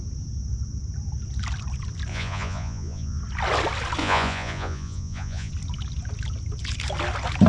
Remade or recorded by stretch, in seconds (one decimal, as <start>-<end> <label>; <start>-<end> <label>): 0.0-2.1 recorded; 2.1-3.2 remade; 3.2-4.0 recorded; 4.0-5.5 remade; 5.5-7.5 recorded